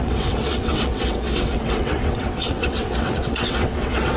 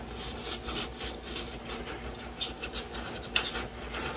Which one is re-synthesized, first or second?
first